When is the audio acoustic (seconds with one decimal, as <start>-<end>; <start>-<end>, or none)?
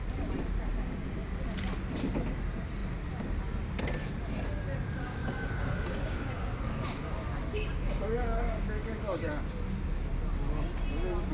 0.0-0.7; 1.3-5.2; 7.1-7.5; 9.3-11.3